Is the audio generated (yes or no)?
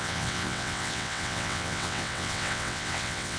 yes